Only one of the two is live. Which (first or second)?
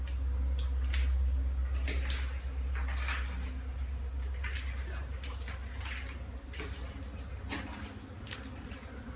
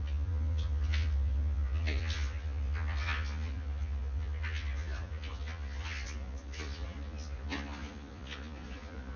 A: first